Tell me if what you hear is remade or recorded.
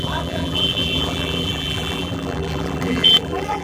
remade